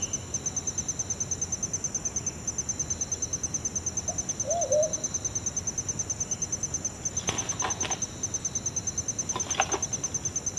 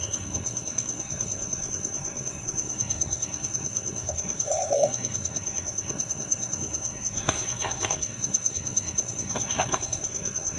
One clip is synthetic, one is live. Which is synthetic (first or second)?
second